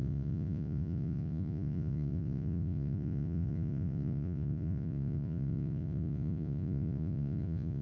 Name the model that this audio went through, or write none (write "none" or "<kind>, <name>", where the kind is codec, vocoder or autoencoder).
vocoder, Vocos